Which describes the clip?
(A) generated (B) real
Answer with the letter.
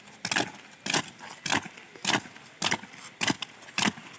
B